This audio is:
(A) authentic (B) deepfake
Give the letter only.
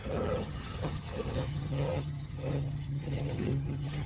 B